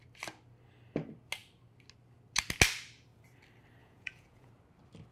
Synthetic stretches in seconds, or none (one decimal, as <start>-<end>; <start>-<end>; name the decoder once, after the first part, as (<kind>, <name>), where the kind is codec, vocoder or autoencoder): 3.8-4.5 (vocoder, Vocos)

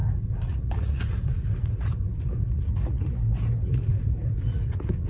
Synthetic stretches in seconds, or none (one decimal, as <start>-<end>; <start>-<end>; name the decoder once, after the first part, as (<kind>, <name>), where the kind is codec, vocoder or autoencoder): 0.0-3.1 (vocoder, Vocos); 3.6-5.1

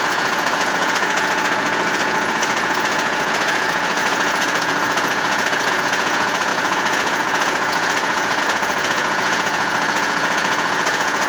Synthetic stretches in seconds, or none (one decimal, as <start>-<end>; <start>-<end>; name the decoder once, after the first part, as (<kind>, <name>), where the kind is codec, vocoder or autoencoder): 0.0-11.3 (vocoder, Vocos)

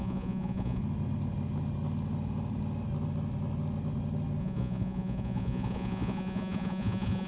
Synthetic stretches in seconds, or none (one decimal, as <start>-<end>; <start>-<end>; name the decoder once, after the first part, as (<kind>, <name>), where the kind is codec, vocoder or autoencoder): 0.0-0.8 (vocoder, Vocos); 4.4-7.3

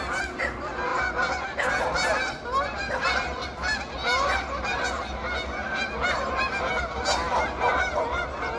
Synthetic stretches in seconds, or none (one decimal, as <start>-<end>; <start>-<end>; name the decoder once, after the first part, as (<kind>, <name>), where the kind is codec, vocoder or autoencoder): none

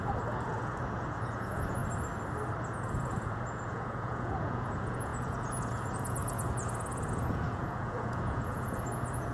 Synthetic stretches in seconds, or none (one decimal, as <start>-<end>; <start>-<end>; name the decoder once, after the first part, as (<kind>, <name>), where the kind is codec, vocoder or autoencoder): 0.0-1.8 (vocoder, Vocos); 2.6-9.3

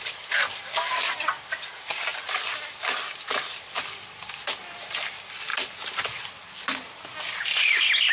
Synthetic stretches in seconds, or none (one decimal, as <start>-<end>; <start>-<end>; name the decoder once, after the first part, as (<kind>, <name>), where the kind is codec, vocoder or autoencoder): none